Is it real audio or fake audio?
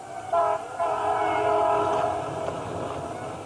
real